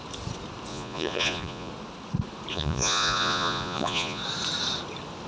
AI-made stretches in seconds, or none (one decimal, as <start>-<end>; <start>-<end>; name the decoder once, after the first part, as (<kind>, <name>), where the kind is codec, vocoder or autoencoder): 0.7-1.7 (vocoder, Vocos); 2.5-4.2